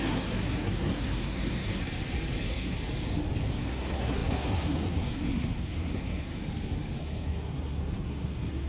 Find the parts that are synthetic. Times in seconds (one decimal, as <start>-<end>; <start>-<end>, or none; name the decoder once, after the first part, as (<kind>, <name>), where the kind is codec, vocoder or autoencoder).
0.0-1.8 (codec, SNAC); 2.4-2.8; 3.4-6.4; 7.0-8.7